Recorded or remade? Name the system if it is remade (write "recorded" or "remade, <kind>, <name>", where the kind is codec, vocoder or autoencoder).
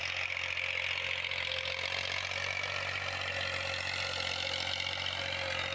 recorded